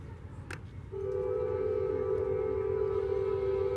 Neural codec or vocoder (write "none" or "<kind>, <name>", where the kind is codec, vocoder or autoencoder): none